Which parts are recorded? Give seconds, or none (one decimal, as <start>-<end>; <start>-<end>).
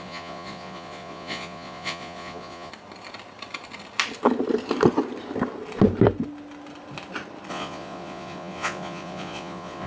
2.7-7.5